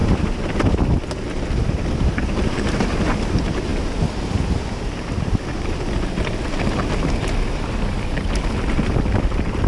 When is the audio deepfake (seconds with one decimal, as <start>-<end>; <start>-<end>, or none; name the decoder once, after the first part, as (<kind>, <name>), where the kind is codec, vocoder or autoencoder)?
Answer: 1.4-9.7 (vocoder, BigVGAN v2)